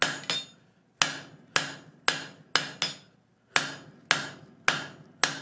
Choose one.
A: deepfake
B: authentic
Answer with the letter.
B